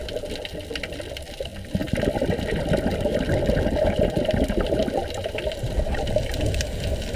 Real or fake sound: real